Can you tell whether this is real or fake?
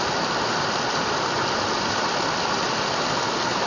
real